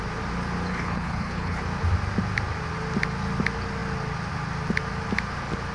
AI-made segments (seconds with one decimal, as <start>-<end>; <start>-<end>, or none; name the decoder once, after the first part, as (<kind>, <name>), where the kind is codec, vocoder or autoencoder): 0.7-1.6 (codec, HILCodec)